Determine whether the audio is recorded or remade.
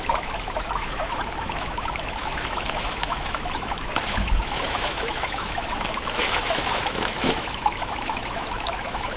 remade